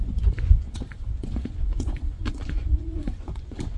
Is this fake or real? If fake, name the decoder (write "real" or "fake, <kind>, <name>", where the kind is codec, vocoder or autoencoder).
fake, vocoder, Vocos